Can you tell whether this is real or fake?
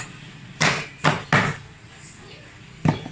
real